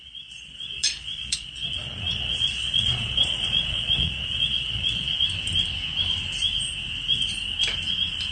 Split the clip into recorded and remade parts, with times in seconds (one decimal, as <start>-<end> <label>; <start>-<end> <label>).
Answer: 0.0-5.1 remade; 5.1-8.3 recorded